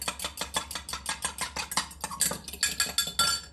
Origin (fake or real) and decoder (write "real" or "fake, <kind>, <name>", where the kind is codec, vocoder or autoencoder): real